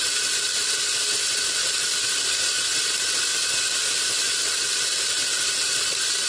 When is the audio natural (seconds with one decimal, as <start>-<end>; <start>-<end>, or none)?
0.0-6.3